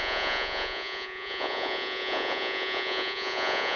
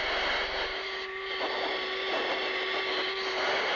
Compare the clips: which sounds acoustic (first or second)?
second